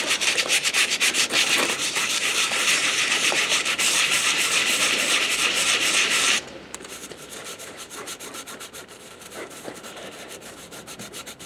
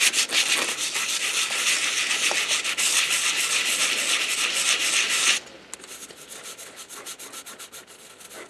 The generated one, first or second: first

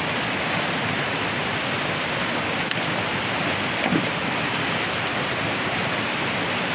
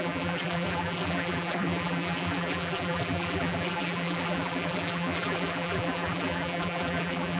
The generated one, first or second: second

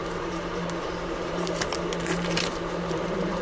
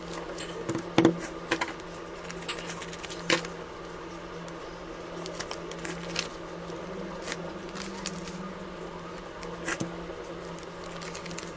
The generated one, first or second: first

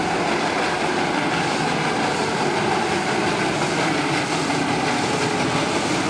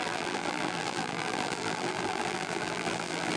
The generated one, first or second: second